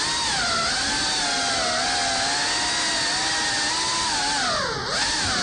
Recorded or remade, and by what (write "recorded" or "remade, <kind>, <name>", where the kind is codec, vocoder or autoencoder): recorded